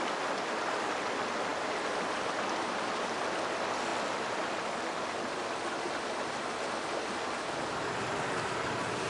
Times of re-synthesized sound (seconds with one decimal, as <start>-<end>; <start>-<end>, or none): none